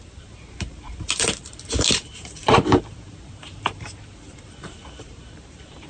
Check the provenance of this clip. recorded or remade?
remade